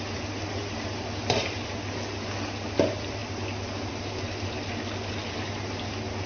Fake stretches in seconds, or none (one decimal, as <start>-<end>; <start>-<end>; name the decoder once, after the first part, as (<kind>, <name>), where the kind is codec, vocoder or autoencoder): none